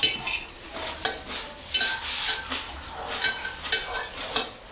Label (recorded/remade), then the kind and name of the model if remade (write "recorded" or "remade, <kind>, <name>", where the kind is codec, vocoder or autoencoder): recorded